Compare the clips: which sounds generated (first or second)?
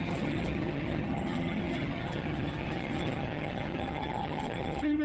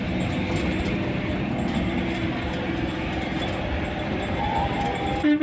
first